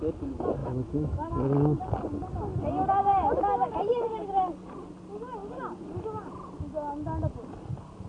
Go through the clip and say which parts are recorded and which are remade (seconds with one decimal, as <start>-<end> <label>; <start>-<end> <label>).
0.0-0.6 recorded; 0.6-1.3 remade; 1.3-8.1 recorded